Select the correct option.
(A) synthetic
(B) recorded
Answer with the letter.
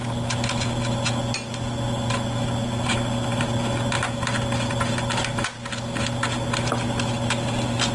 B